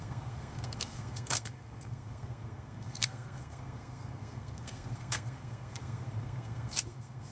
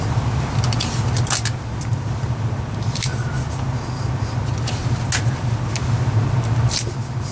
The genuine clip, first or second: second